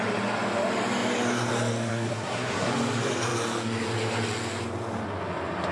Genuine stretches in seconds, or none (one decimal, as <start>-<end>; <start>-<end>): 0.0-1.9; 2.7-5.7